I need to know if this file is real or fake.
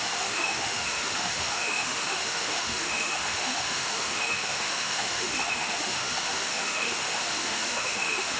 fake